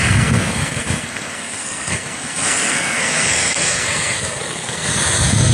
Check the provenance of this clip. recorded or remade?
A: remade